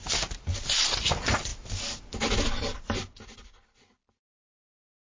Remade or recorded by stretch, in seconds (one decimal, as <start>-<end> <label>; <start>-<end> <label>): 0.0-5.1 recorded